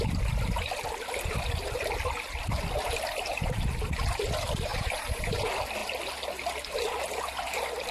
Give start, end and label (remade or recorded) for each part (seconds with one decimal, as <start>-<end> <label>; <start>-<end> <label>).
0.0-4.7 recorded; 4.7-5.3 remade; 5.3-7.9 recorded